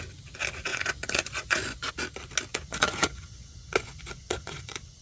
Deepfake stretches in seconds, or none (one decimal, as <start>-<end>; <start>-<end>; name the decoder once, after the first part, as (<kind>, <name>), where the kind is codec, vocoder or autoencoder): 0.7-1.9 (vocoder, Vocos); 2.5-5.0